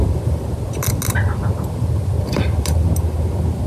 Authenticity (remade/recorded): recorded